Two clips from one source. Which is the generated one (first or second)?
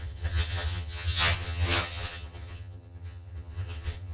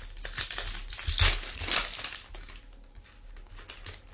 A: first